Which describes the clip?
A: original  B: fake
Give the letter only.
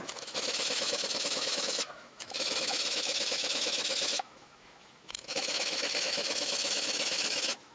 B